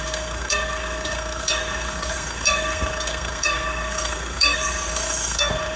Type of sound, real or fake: fake